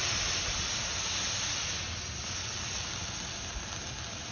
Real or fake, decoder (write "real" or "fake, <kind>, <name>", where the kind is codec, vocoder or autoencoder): real